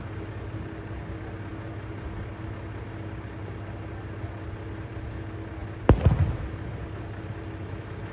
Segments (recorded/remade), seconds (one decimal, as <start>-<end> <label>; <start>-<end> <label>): 0.0-8.1 recorded